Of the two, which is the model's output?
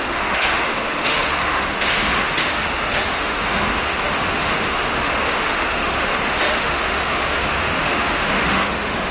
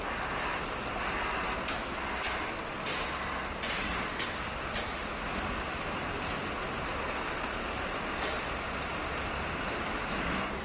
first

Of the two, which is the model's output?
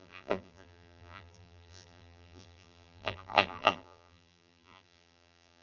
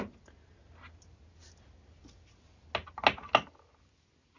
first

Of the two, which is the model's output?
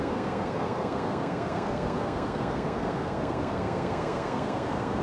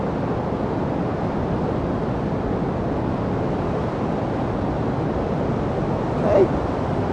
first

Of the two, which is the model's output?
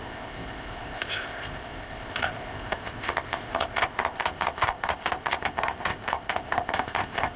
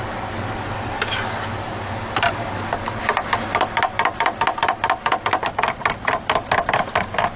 first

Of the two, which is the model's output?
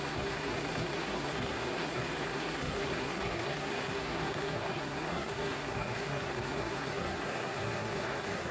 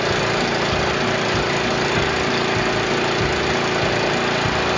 first